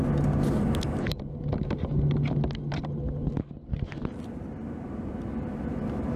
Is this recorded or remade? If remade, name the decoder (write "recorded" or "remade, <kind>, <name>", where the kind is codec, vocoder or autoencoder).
recorded